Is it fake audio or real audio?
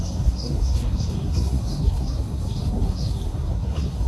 fake